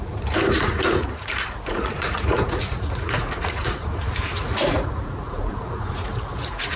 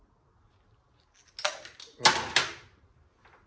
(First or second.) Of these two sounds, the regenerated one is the first